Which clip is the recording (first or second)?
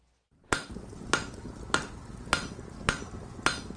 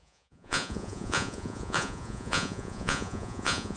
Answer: first